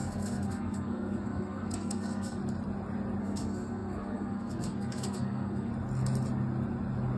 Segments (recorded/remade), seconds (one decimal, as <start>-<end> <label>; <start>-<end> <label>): 0.0-2.4 remade; 2.4-3.2 recorded; 3.2-5.7 remade; 5.7-7.2 recorded

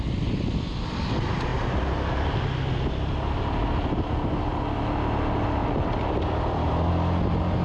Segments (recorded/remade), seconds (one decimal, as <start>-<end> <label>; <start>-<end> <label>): 0.0-7.6 recorded